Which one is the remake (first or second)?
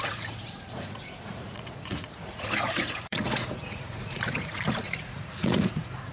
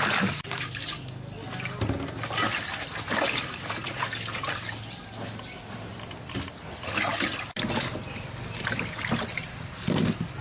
first